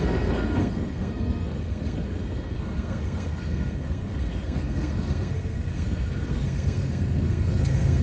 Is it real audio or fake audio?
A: fake